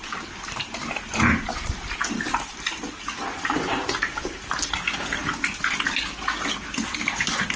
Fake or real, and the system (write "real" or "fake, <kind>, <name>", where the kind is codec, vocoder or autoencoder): real